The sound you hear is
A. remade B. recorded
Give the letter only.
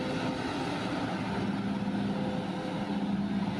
B